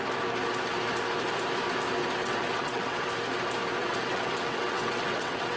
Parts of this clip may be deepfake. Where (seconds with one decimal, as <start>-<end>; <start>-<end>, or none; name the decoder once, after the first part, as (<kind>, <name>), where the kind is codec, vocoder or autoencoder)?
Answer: 2.2-3.1 (vocoder, WaveNeXt); 3.8-5.6